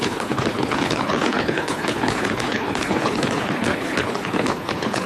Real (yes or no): no